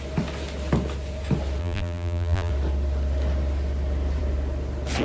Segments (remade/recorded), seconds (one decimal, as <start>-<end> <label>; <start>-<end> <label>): 0.0-1.6 recorded; 1.6-2.5 remade; 2.5-5.0 recorded